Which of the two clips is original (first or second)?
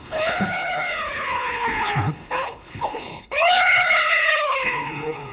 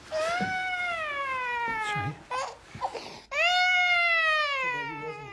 second